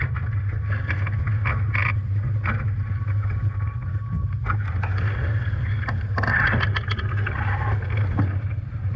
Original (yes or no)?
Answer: yes